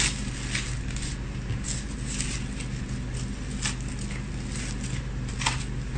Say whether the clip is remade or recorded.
recorded